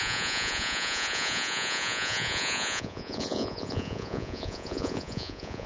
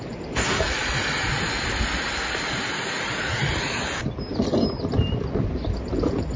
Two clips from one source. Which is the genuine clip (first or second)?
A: second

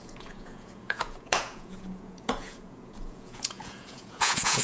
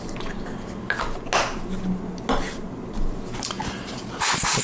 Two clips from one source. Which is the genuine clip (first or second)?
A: second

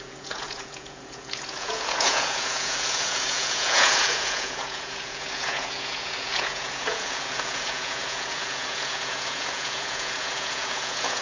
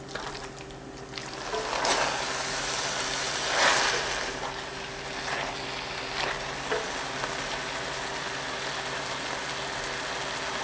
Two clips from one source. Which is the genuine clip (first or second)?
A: second